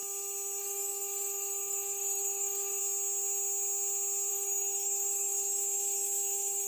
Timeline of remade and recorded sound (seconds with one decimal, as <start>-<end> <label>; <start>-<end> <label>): 0.0-0.6 recorded; 0.6-2.8 remade; 2.8-4.3 recorded; 4.3-6.7 remade

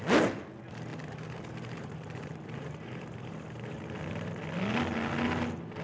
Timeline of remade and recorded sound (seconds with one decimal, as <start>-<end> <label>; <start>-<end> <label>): 0.0-0.9 recorded; 0.9-4.4 remade; 4.4-5.8 recorded

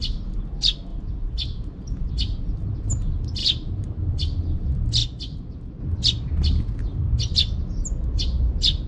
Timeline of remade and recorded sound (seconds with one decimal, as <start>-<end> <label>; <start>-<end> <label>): 0.0-0.9 recorded; 0.9-2.1 remade; 2.1-3.4 recorded; 3.4-4.1 remade; 4.1-8.9 recorded